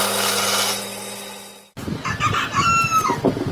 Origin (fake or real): real